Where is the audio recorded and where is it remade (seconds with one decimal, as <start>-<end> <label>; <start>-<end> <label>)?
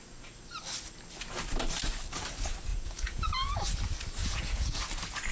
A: 0.0-2.7 recorded; 2.7-3.6 remade; 3.6-4.2 recorded; 4.2-4.8 remade; 4.8-5.3 recorded